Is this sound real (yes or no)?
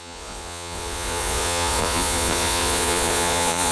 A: no